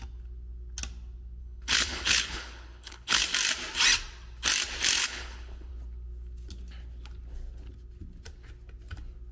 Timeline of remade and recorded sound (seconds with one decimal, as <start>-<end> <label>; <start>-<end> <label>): 0.0-1.4 recorded; 1.4-3.2 remade; 3.2-5.0 recorded; 5.0-5.7 remade; 5.7-9.3 recorded